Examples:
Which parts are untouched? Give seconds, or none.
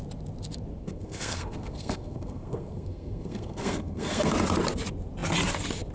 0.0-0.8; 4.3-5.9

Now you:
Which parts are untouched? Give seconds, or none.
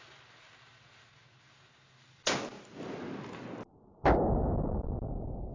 0.0-5.5